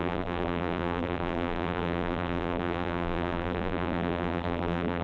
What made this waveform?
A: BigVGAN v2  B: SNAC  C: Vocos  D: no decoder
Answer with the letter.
A